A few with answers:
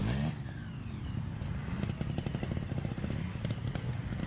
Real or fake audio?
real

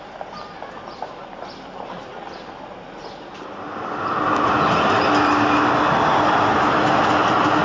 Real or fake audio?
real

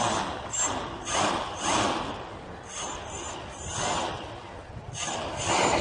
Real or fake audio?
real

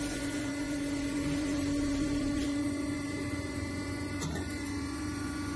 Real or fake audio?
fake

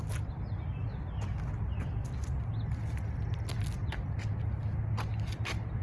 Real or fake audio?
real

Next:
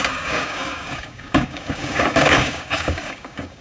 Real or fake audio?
fake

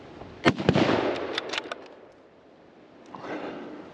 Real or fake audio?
real